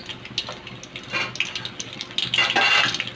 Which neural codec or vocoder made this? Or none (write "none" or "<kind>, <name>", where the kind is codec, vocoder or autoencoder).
none